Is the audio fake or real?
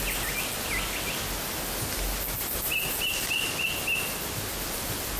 real